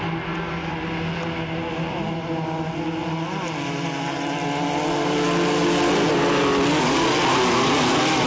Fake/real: real